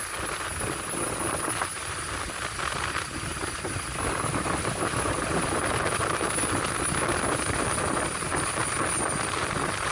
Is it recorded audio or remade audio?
recorded